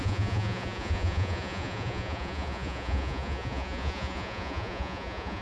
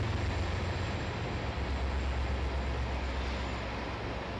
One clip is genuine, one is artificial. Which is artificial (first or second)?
first